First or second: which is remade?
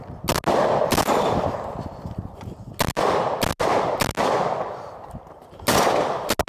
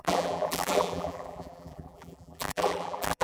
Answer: second